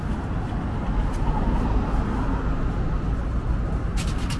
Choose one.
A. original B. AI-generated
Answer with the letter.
A